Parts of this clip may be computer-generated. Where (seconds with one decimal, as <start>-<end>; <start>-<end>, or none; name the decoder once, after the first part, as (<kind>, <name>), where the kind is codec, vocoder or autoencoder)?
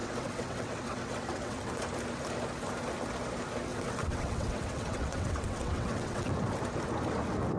0.0-1.8 (vocoder, WaveNeXt); 3.7-6.3